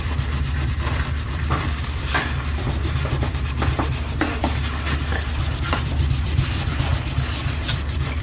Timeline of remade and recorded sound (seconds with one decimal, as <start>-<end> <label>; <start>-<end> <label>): 0.0-6.9 remade; 6.9-7.7 recorded; 7.7-8.2 remade